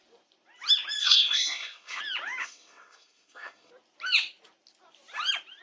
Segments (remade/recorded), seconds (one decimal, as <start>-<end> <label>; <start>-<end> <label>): 0.0-1.0 recorded; 1.0-2.0 remade; 2.0-2.4 recorded; 2.4-3.7 remade; 3.7-5.6 recorded